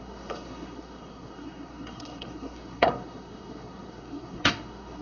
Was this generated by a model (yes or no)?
yes